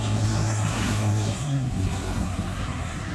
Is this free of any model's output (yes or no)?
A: no